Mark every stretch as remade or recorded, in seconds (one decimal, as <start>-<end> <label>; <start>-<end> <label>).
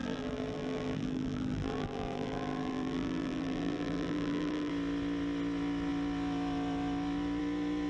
0.0-4.7 remade; 4.7-7.9 recorded